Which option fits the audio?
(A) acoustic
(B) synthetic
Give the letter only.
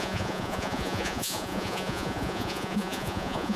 B